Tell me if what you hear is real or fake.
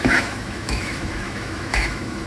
fake